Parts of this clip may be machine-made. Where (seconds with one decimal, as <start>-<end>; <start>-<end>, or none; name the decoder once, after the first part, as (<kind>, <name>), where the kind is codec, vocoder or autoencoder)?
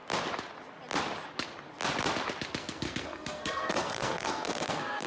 2.6-5.1 (codec, SNAC)